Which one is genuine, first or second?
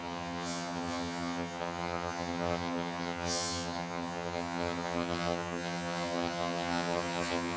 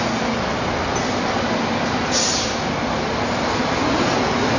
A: second